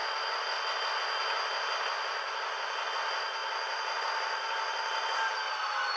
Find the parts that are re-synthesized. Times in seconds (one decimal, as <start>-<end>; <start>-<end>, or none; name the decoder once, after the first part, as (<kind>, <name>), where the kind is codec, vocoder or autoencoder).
3.4-5.3 (vocoder, BigVGAN v2)